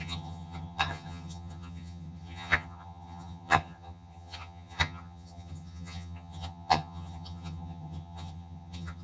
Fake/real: fake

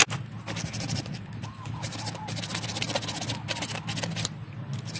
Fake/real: real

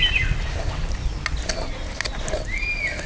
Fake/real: real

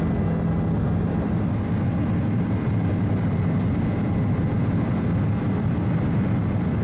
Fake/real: real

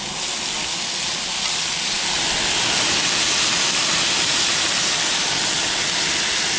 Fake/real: real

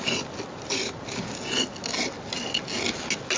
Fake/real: real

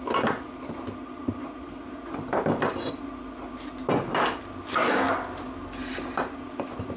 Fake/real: real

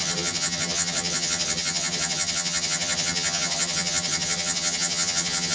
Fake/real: fake